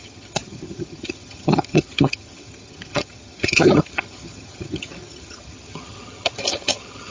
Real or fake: fake